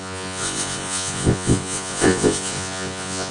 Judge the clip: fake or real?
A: fake